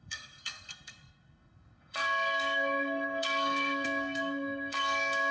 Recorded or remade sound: remade